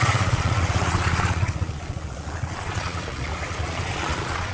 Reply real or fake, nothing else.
fake